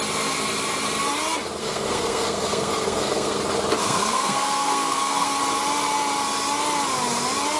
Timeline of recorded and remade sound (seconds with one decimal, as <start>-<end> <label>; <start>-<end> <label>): 0.0-1.6 recorded; 1.6-3.4 remade; 3.4-3.8 recorded; 3.8-5.4 remade; 5.4-7.6 recorded